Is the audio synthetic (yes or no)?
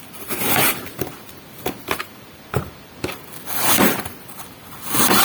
no